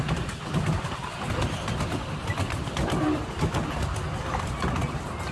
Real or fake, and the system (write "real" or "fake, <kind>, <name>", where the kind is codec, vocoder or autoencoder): real